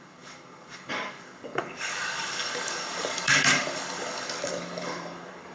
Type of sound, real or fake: fake